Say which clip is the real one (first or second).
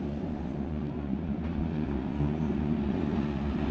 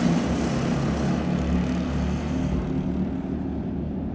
second